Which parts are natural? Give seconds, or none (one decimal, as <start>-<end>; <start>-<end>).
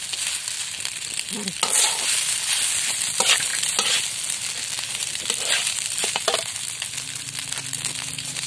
0.0-8.5